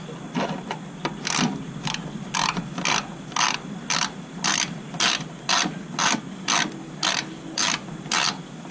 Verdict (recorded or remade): recorded